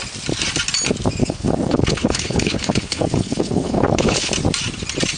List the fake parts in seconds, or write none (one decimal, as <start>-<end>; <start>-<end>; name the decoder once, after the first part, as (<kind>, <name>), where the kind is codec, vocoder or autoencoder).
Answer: 1.2-4.3 (codec, HILCodec)